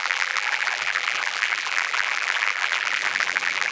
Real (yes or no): no